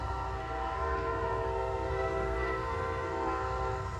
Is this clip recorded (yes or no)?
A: no